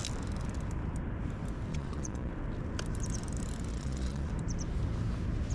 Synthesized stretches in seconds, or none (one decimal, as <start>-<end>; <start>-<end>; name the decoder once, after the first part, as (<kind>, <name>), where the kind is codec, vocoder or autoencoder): 1.7-2.3 (vocoder, Vocos); 3.7-4.3